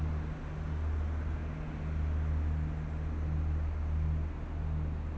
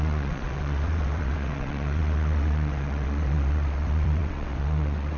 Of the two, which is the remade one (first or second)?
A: second